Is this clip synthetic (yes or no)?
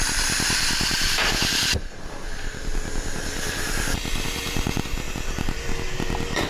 yes